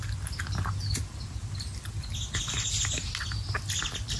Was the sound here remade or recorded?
recorded